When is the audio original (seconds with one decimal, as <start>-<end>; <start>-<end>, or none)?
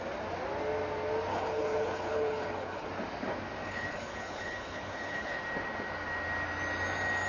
0.0-1.3; 2.9-3.6; 5.4-7.3